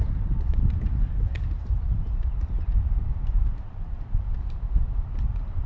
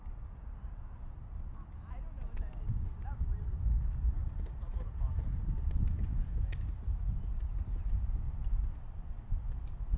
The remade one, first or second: first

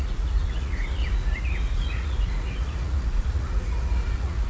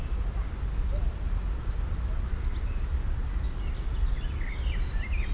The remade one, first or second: first